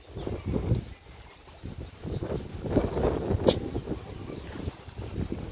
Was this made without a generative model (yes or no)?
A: yes